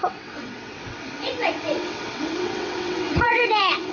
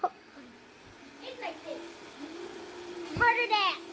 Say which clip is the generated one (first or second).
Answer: first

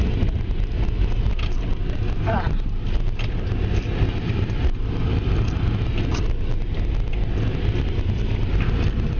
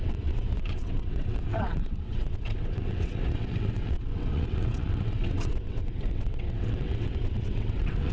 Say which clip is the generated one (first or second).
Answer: second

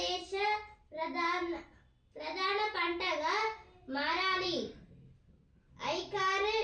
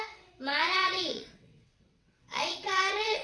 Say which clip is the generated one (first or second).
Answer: second